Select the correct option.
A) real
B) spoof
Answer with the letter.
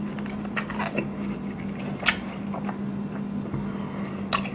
A